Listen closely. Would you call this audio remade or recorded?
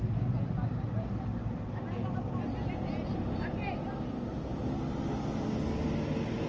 recorded